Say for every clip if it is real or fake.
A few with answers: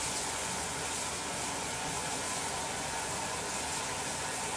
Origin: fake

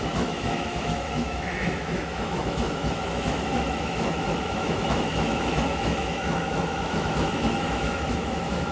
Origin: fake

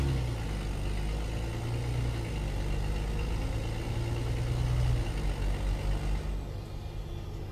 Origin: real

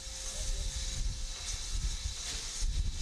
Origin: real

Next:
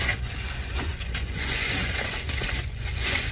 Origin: fake